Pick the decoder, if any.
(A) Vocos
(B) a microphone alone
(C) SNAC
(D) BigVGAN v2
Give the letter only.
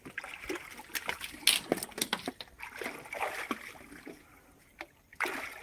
B